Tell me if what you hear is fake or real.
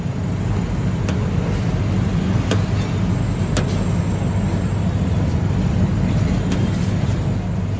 real